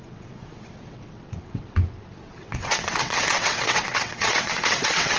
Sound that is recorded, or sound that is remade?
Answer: remade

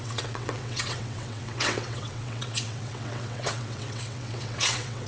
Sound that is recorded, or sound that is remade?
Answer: remade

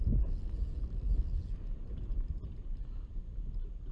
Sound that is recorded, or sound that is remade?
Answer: recorded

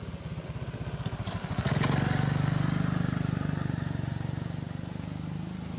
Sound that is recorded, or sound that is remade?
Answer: recorded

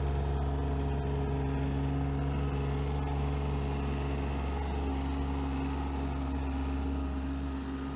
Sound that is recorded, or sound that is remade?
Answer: recorded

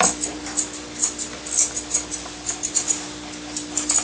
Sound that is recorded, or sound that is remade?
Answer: recorded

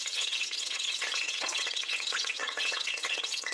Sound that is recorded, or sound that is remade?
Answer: remade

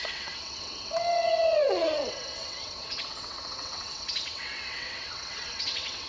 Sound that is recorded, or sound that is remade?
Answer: remade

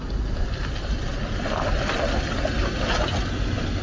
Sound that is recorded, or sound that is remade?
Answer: recorded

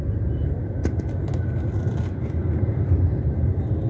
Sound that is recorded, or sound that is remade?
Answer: recorded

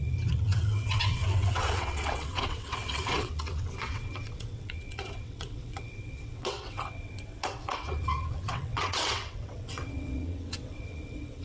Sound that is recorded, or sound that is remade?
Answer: remade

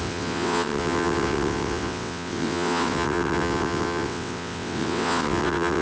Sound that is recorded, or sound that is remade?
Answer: remade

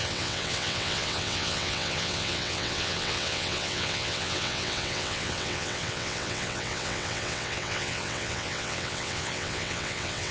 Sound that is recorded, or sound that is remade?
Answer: remade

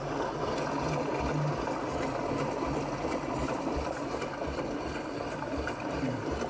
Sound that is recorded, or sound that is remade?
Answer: recorded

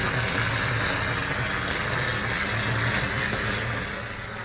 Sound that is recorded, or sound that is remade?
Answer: recorded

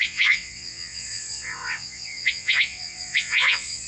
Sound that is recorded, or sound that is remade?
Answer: remade